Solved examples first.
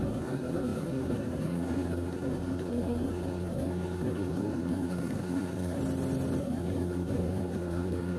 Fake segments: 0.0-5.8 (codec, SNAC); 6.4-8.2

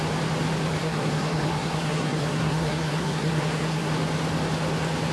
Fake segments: 0.8-3.9 (codec, SNAC)